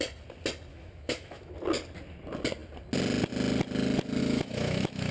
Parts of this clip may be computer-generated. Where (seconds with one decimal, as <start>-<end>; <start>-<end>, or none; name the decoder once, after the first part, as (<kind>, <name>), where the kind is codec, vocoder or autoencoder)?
0.7-1.5 (autoencoder, DAC-VAE); 4.2-5.1